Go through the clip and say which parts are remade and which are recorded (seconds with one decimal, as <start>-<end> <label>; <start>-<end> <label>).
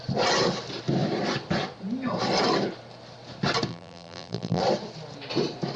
0.0-3.7 recorded; 3.7-4.6 remade; 4.6-5.8 recorded